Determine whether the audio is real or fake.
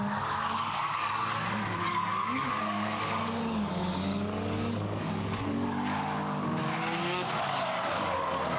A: fake